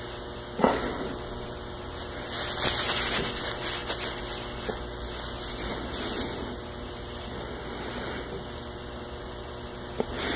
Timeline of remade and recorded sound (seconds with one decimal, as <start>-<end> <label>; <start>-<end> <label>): 0.0-10.4 recorded